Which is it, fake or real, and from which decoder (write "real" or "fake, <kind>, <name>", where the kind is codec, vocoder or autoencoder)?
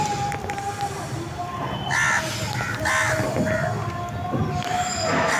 real